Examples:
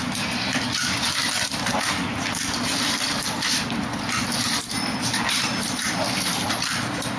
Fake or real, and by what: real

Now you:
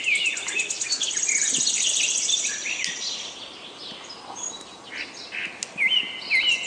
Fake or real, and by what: real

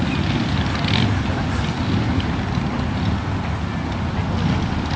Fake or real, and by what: real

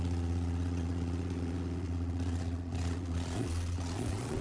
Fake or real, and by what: fake, vocoder, Vocos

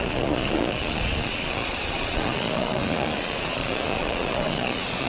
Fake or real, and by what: fake, vocoder, Vocos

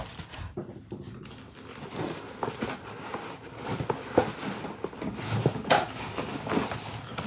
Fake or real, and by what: real